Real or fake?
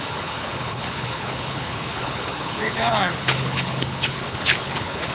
fake